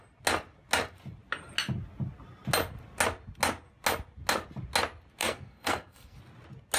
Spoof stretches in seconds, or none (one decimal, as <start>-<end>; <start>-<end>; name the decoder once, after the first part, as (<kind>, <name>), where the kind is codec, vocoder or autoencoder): 5.2-6.2 (codec, SNAC)